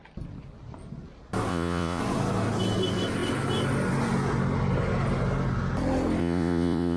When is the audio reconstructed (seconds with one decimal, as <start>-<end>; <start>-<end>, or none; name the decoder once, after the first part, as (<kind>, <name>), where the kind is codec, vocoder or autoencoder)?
1.5-2.0 (vocoder, Vocos); 6.2-7.0